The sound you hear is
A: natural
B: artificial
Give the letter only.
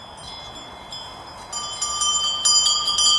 A